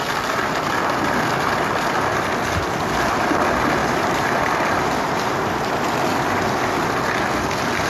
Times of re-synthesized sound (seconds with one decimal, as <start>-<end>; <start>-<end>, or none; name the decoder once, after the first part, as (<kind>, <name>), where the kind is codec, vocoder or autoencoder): 3.8-5.7 (vocoder, BigVGAN v2)